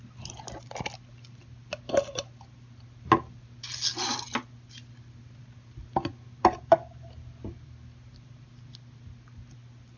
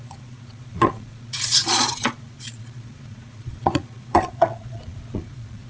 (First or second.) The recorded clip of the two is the first